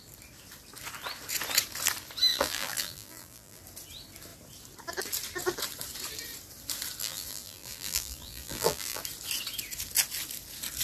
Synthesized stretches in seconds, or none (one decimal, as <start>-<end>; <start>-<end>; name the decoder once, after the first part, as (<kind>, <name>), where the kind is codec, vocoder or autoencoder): 2.3-3.6 (vocoder, BigVGAN v2); 7.0-9.0

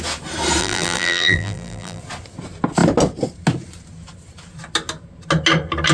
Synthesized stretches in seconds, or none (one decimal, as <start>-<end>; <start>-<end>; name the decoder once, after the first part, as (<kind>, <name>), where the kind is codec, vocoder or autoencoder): 0.6-2.0 (vocoder, BigVGAN v2)

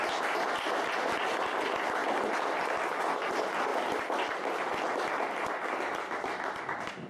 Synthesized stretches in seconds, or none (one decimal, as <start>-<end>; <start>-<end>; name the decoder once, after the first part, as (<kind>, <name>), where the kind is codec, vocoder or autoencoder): none

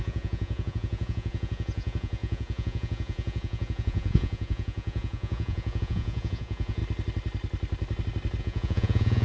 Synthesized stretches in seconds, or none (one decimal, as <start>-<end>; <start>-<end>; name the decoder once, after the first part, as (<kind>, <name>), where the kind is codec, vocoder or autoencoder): 0.0-6.8 (vocoder, Vocos); 8.4-9.2

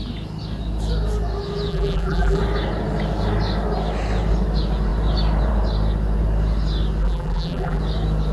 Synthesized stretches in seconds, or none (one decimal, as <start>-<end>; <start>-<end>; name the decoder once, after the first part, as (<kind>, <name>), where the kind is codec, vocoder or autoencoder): 1.7-2.4 (vocoder, BigVGAN v2); 7.0-7.8

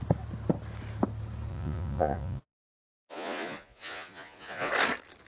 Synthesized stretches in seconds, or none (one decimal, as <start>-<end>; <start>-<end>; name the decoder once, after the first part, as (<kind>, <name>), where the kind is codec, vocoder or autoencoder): 1.5-4.7 (vocoder, Vocos)

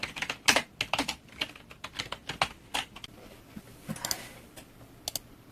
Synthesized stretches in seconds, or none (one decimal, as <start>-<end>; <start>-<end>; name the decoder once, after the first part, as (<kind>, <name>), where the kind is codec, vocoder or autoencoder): none

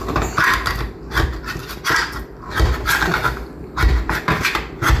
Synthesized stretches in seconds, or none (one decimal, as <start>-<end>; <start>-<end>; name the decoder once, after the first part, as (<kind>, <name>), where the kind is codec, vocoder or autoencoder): 1.6-4.4 (vocoder, BigVGAN v2)